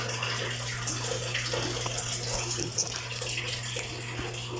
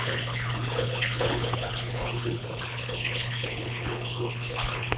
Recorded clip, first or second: first